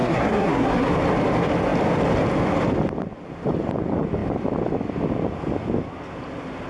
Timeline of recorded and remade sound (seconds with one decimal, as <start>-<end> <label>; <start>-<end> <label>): 0.0-0.9 remade; 0.9-6.7 recorded